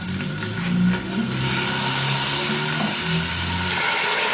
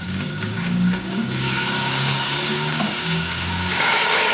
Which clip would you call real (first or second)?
first